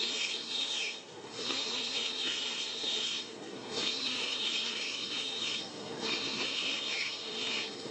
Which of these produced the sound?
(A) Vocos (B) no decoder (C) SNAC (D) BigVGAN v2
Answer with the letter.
C